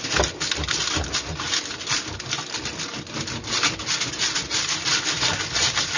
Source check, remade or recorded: recorded